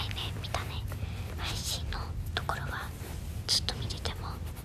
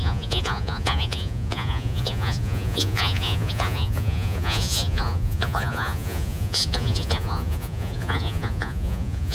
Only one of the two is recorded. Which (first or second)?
first